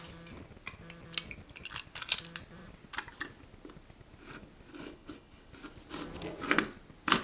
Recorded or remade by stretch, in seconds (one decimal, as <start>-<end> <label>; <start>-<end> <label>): 0.0-4.7 recorded; 4.7-5.5 remade; 5.5-7.2 recorded